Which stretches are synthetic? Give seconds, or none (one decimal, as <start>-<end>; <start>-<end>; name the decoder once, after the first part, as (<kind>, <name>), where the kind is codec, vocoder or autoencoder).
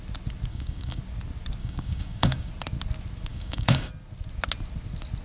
0.5-1.0 (codec, DAC); 1.6-2.5; 3.3-3.9